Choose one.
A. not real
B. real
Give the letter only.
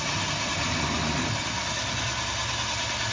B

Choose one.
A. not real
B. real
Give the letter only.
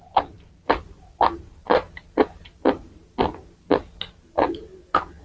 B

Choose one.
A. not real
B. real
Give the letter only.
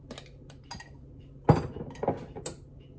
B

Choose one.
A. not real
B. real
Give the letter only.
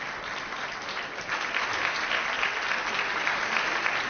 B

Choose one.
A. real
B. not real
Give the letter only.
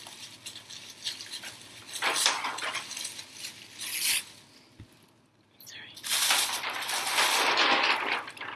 A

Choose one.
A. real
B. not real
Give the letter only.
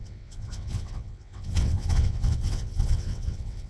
B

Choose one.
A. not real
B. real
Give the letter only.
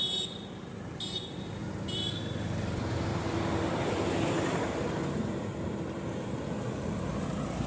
B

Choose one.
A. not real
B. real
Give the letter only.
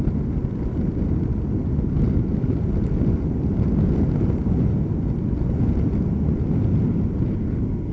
B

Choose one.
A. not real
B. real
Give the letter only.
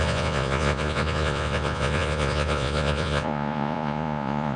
A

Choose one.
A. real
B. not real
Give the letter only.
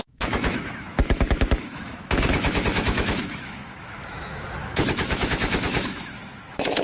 B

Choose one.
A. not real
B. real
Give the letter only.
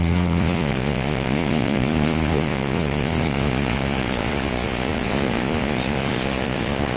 A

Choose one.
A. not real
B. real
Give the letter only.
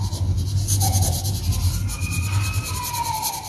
B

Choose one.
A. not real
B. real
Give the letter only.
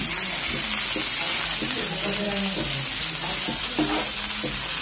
B